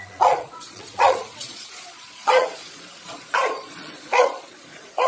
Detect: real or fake fake